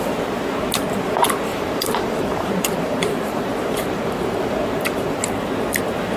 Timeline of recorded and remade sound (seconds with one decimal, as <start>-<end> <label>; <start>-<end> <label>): 0.0-1.5 recorded; 1.5-5.2 remade; 5.2-6.2 recorded